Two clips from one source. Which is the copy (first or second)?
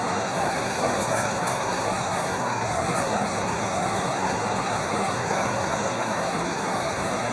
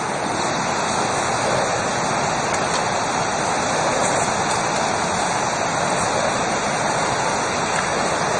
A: first